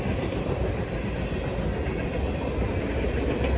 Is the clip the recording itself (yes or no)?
yes